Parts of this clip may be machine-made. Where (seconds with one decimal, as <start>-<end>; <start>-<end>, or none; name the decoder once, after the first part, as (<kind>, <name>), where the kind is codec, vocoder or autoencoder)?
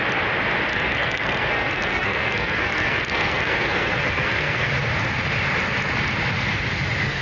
0.7-4.7 (codec, SNAC)